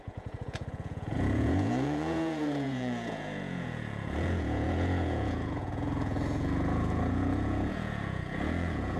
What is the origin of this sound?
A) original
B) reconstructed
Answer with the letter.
B